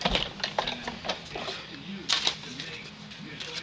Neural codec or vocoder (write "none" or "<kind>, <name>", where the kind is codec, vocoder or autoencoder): none